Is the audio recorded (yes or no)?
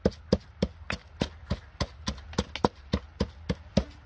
yes